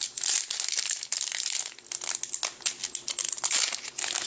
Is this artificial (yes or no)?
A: no